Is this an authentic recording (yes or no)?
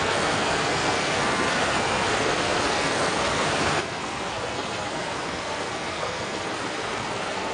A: no